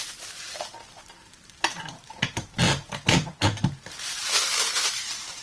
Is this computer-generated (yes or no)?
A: yes